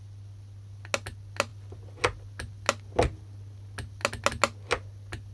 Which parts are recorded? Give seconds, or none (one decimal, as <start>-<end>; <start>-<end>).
0.0-5.3